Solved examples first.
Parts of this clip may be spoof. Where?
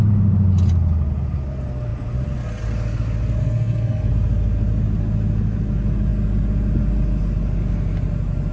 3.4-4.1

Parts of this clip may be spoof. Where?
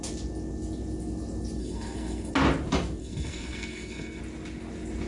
1.6-2.3; 3.0-4.2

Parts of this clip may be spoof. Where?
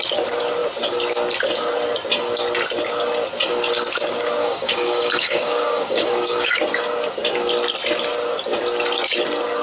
4.4-6.6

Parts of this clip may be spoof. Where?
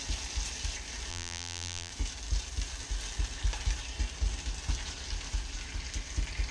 1.1-1.9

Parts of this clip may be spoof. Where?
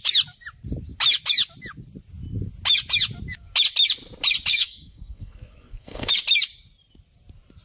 4.5-6.1